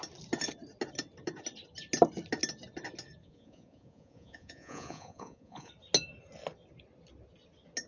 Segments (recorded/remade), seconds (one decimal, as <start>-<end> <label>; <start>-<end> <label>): 0.0-3.2 recorded; 3.2-5.7 remade; 5.7-7.9 recorded